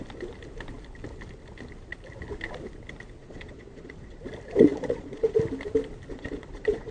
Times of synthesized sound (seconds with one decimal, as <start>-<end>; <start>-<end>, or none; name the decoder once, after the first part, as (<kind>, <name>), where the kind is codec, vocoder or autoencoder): 3.2-4.2 (vocoder, Vocos); 4.7-5.4; 6.1-6.9